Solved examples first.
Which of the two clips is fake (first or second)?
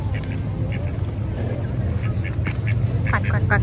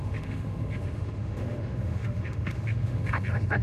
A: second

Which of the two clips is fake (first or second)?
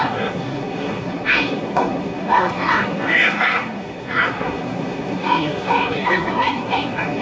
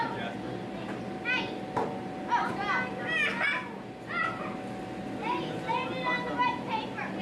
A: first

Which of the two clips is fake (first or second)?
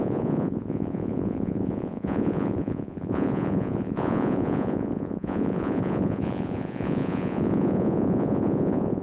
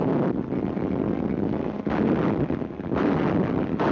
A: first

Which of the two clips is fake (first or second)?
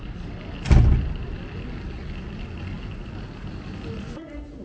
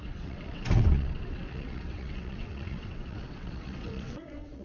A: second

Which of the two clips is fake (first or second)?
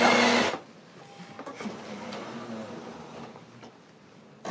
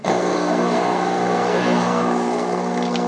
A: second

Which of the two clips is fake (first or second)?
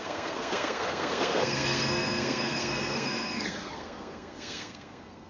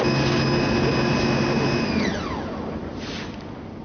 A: first